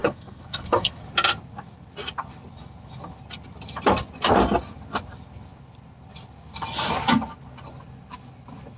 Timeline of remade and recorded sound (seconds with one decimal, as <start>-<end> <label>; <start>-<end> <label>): 0.0-1.0 remade; 1.0-8.8 recorded

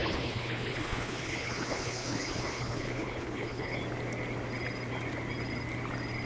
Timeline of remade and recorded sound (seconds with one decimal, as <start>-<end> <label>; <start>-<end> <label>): 0.0-3.8 remade; 3.8-6.3 recorded

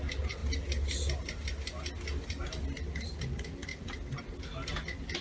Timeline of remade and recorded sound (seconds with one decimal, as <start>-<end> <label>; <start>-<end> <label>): 0.0-5.2 recorded

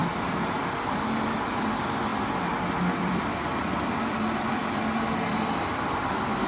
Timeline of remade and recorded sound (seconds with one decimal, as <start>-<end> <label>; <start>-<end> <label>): 0.0-2.1 remade; 2.1-2.9 recorded; 2.9-4.6 remade; 4.6-5.6 recorded; 5.6-6.5 remade

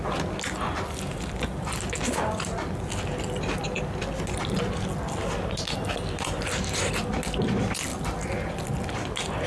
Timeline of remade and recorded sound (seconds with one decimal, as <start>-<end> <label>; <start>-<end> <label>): 0.0-9.5 recorded